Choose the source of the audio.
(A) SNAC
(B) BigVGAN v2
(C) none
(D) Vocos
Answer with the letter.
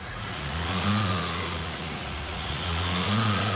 D